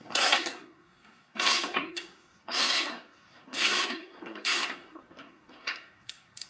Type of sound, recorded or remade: remade